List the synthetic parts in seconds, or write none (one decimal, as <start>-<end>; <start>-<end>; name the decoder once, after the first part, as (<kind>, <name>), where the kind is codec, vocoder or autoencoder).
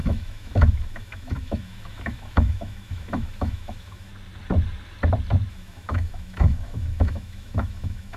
0.0-4.1 (autoencoder, DAC-VAE); 5.5-8.2